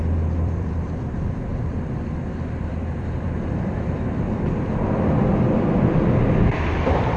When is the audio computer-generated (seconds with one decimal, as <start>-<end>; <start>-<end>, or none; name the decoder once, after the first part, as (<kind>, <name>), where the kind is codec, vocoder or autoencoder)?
0.0-1.5 (vocoder, BigVGAN v2); 2.6-7.2